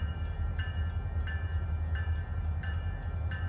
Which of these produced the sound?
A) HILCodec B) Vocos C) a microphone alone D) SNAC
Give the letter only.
C